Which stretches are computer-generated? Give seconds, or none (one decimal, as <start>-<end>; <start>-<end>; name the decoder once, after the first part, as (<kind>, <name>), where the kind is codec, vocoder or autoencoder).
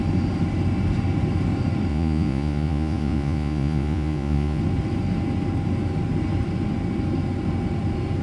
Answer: 1.9-4.6 (vocoder, Vocos)